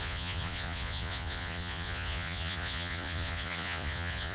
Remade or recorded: remade